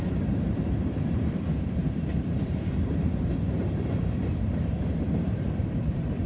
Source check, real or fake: fake